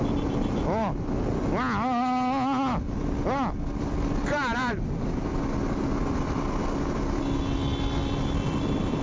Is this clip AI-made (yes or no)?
no